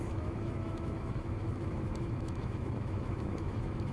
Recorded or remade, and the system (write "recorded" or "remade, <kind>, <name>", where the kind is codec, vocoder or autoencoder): remade, autoencoder, DAC-VAE